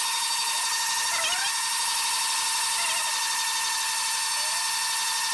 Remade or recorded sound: recorded